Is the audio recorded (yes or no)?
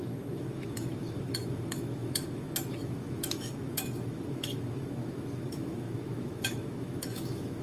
no